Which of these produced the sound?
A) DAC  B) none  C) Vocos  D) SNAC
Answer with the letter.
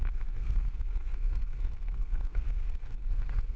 D